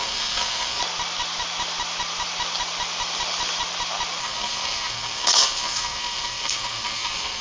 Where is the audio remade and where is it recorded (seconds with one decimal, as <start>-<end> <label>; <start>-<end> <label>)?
0.0-0.8 remade; 0.8-4.2 recorded; 4.2-7.4 remade